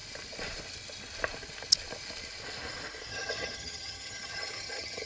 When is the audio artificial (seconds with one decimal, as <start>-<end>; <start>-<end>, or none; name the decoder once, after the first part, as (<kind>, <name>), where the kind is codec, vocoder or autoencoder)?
3.1-5.1 (vocoder, HiFi-GAN)